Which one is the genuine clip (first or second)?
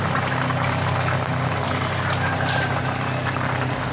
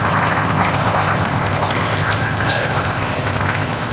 first